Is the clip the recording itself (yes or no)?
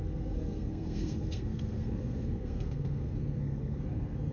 no